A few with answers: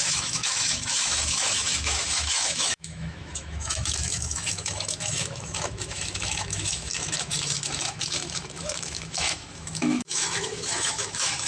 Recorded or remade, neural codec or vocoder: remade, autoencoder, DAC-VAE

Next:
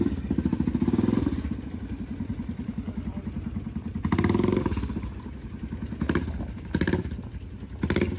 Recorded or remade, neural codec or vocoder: recorded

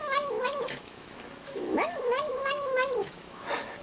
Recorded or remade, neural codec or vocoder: remade, autoencoder, DAC-VAE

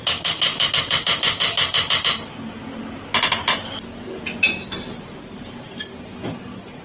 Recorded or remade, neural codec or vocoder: recorded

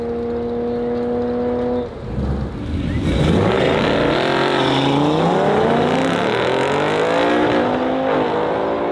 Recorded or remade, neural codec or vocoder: recorded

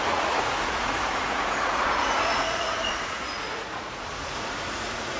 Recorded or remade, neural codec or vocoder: remade, vocoder, Vocos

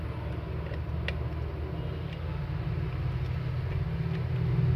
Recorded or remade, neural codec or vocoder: recorded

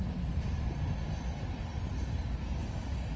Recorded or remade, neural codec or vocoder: recorded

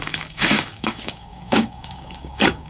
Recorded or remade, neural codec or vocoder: remade, codec, DAC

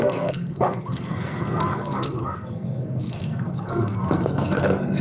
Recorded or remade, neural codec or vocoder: remade, codec, SNAC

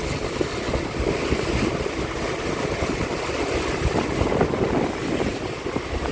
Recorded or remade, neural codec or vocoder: recorded